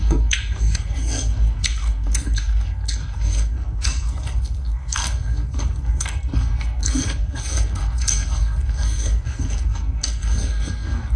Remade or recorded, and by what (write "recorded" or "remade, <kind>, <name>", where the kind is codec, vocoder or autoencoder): remade, codec, SNAC